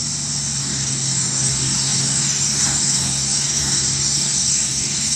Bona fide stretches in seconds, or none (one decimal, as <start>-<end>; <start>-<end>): 0.0-0.6